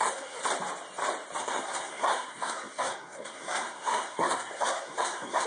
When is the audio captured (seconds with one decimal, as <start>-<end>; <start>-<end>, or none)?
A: 0.4-1.4